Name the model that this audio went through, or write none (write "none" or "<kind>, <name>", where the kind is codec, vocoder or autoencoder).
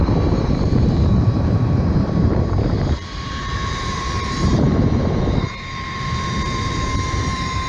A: vocoder, BigVGAN v2